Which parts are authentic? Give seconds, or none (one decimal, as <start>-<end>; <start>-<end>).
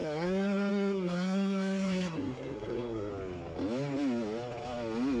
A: 3.1-5.2